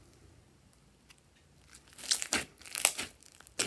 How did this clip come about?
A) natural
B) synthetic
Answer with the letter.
A